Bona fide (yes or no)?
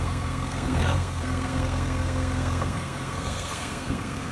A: no